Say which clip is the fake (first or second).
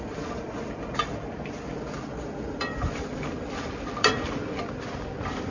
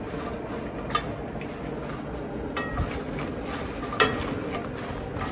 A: first